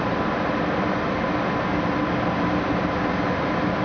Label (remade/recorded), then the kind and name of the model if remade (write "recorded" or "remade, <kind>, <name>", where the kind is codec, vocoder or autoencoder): recorded